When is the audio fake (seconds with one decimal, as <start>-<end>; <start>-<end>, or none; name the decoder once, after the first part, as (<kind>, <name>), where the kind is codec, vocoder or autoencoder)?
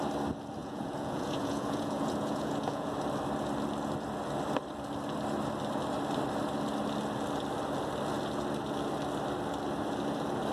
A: 0.6-2.9 (vocoder, Vocos)